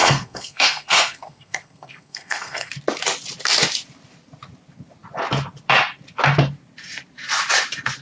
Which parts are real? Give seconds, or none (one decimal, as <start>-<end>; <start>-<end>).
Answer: 2.7-8.0